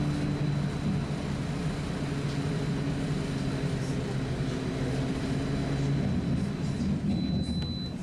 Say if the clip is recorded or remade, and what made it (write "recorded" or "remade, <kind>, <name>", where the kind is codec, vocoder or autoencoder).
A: recorded